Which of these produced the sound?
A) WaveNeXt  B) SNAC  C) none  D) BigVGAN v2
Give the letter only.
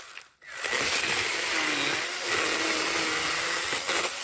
C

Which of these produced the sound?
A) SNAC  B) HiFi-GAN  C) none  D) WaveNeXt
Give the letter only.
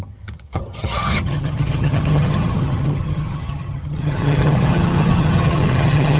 B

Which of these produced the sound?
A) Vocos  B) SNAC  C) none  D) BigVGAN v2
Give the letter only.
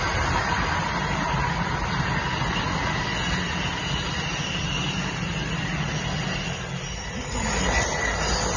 C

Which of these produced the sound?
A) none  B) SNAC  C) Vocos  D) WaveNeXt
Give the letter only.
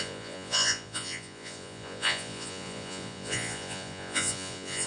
C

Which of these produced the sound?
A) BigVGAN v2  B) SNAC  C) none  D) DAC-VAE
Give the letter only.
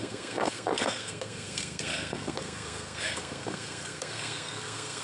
B